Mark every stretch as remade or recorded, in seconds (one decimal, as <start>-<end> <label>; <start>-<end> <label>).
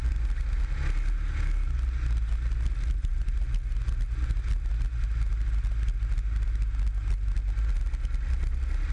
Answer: 0.0-8.9 recorded